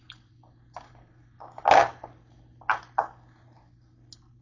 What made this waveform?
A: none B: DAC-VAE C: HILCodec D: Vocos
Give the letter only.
A